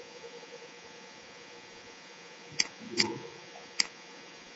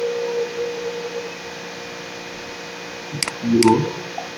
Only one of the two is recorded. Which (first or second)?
second